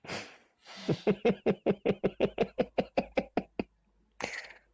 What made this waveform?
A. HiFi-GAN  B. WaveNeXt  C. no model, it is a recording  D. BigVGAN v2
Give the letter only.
C